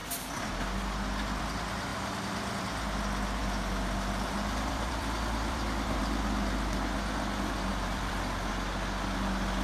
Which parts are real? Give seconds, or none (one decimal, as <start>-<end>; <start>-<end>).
0.0-1.9; 2.6-3.4; 6.0-7.7; 8.5-9.6